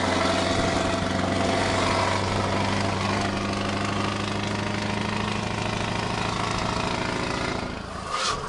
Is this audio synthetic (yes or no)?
no